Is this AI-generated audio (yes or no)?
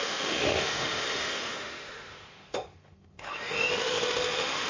yes